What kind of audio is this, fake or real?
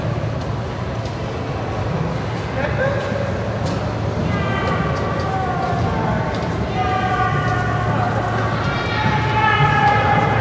real